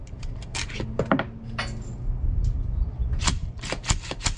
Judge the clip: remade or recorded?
recorded